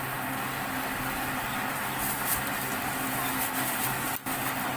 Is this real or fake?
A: real